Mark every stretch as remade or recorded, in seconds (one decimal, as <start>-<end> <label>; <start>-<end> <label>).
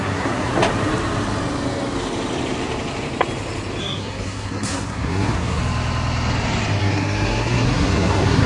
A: 0.0-0.5 remade; 0.5-3.8 recorded; 3.8-5.6 remade; 5.6-6.8 recorded; 6.8-8.5 remade